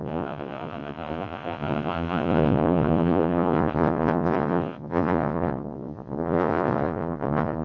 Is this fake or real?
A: fake